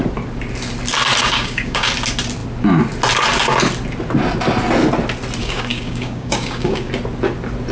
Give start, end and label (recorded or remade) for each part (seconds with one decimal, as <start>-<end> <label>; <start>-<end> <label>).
0.0-1.2 recorded; 1.2-1.9 remade; 1.9-5.4 recorded; 5.4-6.9 remade; 6.9-7.7 recorded